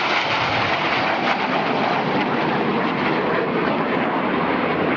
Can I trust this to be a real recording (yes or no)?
yes